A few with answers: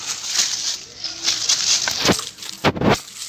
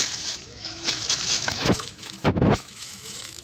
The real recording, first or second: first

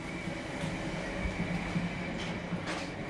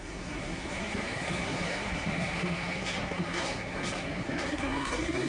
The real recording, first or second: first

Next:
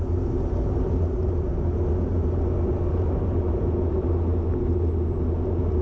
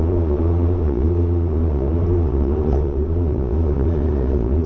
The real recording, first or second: first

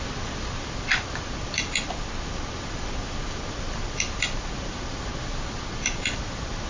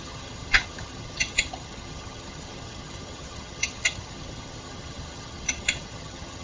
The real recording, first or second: first